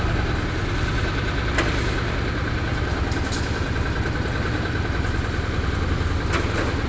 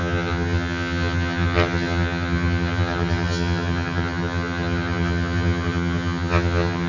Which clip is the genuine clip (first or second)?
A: first